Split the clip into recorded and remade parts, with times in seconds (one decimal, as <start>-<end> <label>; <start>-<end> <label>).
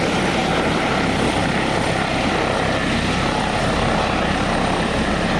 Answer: 0.0-5.4 recorded